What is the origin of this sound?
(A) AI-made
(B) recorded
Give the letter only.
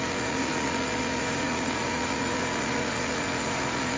A